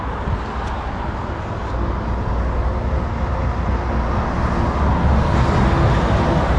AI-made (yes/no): no